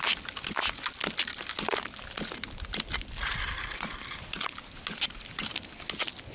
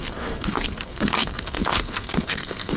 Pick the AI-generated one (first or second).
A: second